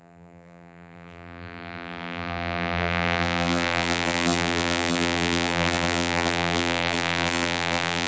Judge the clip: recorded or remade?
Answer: remade